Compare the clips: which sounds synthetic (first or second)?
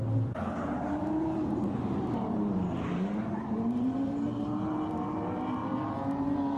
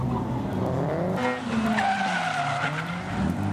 first